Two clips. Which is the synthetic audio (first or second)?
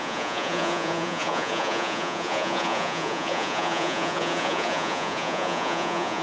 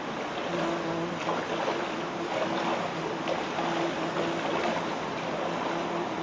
first